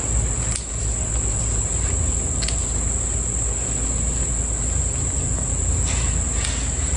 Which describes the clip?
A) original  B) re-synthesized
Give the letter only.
A